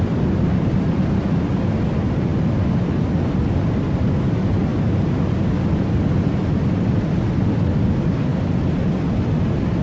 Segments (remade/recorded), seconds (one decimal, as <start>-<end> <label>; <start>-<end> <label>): 0.0-4.7 recorded; 4.7-5.2 remade; 5.2-8.3 recorded; 8.3-9.0 remade; 9.0-9.8 recorded